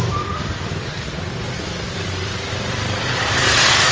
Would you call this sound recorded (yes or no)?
no